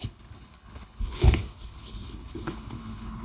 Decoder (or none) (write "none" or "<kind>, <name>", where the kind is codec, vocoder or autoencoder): codec, HILCodec